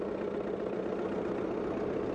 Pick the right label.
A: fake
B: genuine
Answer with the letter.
B